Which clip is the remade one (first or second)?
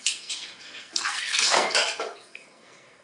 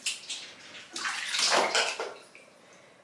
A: first